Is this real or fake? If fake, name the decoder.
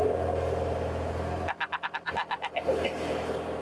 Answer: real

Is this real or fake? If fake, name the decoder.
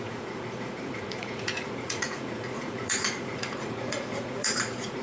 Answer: fake, vocoder, Vocos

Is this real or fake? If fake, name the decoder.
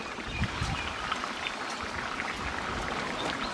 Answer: real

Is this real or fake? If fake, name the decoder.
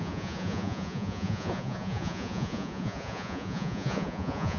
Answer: fake, vocoder, Vocos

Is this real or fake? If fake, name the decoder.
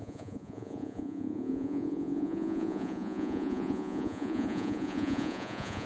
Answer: fake, vocoder, Vocos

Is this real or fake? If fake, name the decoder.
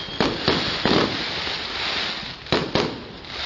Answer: real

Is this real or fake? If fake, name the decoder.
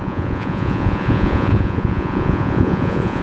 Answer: fake, vocoder, Vocos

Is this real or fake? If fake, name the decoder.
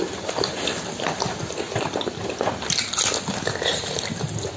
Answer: real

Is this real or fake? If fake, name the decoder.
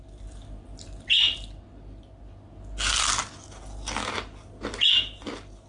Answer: real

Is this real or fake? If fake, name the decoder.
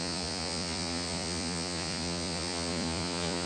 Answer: fake, vocoder, Vocos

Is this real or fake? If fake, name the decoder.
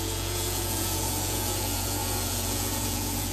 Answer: fake, vocoder, Vocos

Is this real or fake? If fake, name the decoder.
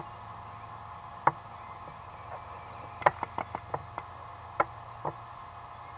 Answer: real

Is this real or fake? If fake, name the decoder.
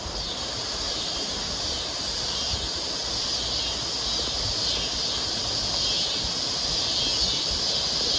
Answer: real